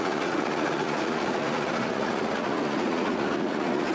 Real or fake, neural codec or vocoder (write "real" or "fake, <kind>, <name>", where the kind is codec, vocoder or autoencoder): fake, vocoder, Vocos